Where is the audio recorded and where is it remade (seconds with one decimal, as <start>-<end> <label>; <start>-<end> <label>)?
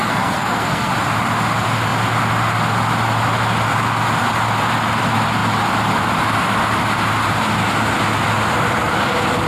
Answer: 0.0-0.9 remade; 0.9-9.5 recorded